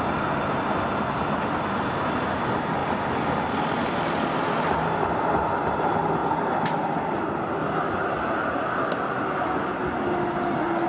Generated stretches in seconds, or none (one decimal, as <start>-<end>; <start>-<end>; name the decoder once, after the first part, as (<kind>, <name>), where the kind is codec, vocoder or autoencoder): none